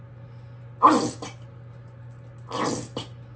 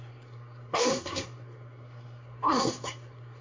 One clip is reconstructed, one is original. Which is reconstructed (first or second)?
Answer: second